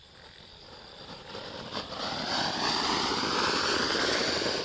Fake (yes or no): yes